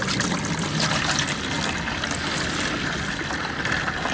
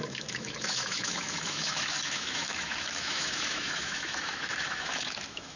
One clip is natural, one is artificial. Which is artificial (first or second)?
second